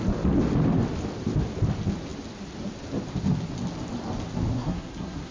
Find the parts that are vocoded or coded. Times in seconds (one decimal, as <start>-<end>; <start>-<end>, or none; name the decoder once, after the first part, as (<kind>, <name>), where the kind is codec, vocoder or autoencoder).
4.5-5.3 (codec, SNAC)